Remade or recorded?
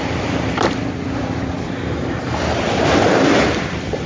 remade